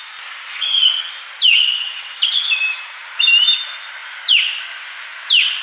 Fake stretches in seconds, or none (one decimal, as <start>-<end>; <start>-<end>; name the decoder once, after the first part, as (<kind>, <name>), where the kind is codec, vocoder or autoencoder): 0.5-1.1 (vocoder, HiFi-GAN); 1.5-2.2